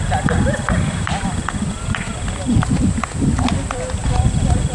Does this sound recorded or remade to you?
recorded